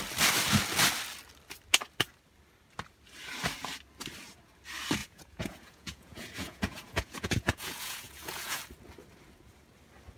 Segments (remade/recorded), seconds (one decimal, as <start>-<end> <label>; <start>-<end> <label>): 0.0-5.0 recorded; 5.0-8.6 remade; 8.6-10.2 recorded